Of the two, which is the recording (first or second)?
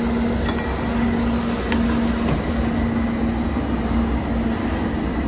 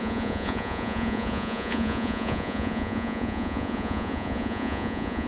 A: first